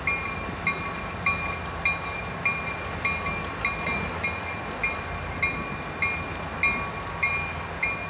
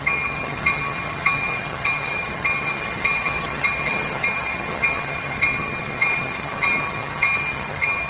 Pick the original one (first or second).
first